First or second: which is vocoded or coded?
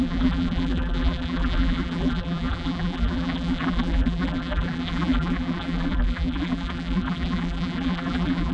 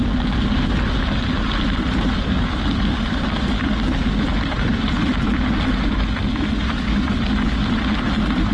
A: first